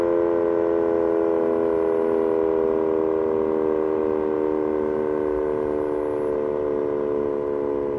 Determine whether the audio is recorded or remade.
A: recorded